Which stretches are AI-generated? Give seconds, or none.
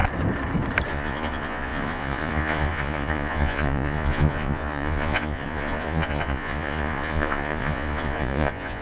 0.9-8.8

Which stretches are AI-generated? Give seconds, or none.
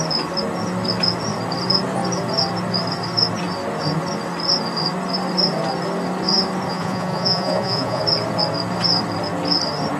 6.7-8.0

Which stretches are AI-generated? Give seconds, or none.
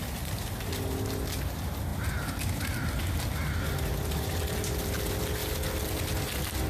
none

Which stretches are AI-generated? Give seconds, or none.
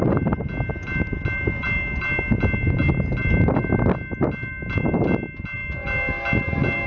none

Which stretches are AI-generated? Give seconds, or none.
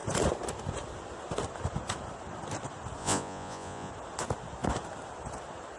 3.0-3.9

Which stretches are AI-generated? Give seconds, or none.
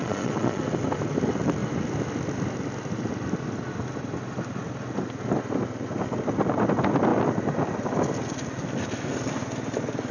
0.0-0.6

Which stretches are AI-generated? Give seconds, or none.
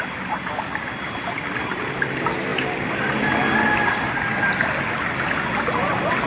none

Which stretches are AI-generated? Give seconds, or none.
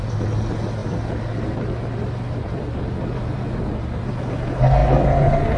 none